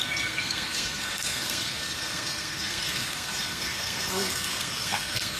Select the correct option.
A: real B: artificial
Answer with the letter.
B